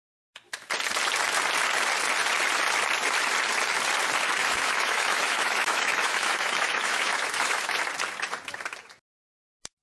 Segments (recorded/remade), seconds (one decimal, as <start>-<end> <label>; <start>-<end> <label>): 0.0-4.4 recorded; 4.4-7.8 remade; 7.8-9.8 recorded